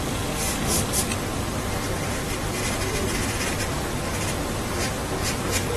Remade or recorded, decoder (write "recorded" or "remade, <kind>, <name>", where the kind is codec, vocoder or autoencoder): recorded